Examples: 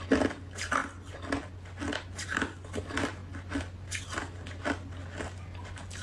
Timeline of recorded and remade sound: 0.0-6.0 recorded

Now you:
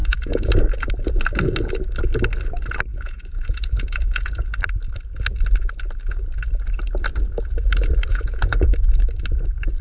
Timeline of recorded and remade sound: 0.0-0.5 remade; 0.5-2.9 recorded; 2.9-4.3 remade; 4.3-8.1 recorded; 8.1-8.7 remade; 8.7-9.8 recorded

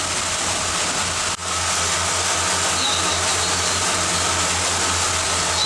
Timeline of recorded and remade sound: 0.0-3.3 recorded; 3.3-4.1 remade; 4.1-5.7 recorded

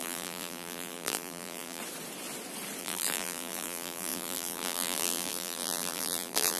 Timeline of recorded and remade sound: 0.0-1.8 remade; 1.8-2.8 recorded; 2.8-6.6 remade

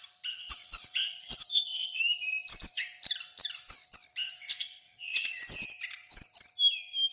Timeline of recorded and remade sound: 0.0-0.4 recorded; 0.4-2.0 remade; 2.0-4.6 recorded; 4.6-5.3 remade; 5.3-7.1 recorded